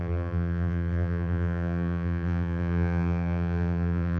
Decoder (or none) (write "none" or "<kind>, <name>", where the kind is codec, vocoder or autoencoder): vocoder, BigVGAN v2